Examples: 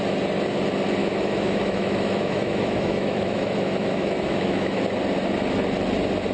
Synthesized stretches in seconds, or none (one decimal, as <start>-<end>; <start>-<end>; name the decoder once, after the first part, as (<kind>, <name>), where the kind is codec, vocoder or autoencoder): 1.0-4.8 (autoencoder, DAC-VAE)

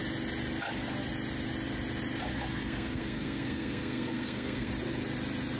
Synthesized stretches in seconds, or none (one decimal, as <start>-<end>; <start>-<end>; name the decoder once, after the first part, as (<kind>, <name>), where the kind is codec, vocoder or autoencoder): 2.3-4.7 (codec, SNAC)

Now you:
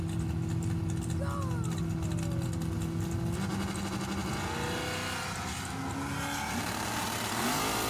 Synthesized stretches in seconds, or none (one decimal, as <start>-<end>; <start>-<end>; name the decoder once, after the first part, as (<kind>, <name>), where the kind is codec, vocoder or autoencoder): none